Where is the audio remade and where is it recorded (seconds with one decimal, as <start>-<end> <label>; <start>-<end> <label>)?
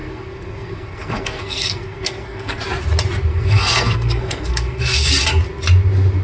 0.0-2.6 remade; 2.6-3.3 recorded; 3.3-5.1 remade; 5.1-6.2 recorded